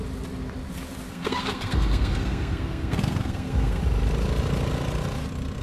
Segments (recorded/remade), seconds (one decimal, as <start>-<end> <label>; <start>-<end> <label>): 0.0-1.1 recorded; 1.1-3.8 remade; 3.8-5.6 recorded